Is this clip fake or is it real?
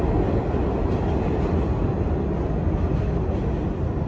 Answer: real